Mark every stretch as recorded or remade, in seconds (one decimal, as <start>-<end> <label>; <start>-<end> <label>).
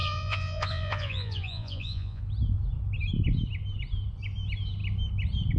0.0-2.2 remade; 2.2-5.6 recorded